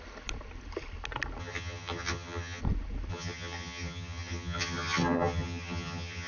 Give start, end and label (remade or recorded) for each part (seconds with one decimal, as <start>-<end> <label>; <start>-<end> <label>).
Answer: 0.0-1.4 recorded; 1.4-2.6 remade; 2.6-3.1 recorded; 3.1-6.3 remade

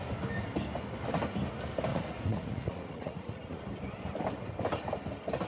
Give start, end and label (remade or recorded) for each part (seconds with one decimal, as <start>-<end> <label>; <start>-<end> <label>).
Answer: 0.0-1.9 recorded; 1.9-3.6 remade; 3.6-5.5 recorded

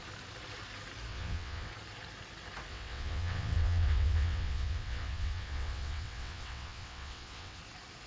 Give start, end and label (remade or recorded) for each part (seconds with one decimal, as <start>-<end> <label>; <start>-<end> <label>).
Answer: 0.0-1.1 recorded; 1.1-1.7 remade; 1.7-2.7 recorded; 2.7-7.6 remade; 7.6-8.1 recorded

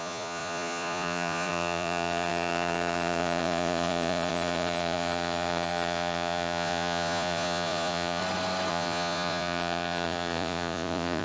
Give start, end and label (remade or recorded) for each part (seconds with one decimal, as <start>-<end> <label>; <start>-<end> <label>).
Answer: 0.0-8.2 remade; 8.2-8.7 recorded; 8.7-11.2 remade

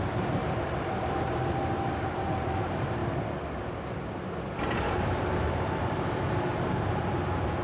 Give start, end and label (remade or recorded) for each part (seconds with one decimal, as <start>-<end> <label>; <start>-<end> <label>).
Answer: 0.0-3.0 remade; 3.0-4.9 recorded; 4.9-7.6 remade